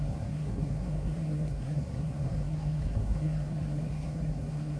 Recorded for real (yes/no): no